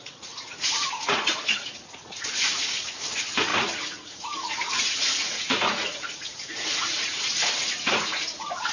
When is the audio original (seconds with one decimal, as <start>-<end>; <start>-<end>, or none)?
none